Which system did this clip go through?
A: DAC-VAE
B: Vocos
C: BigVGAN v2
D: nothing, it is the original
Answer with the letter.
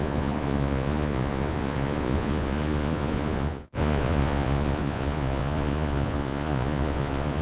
B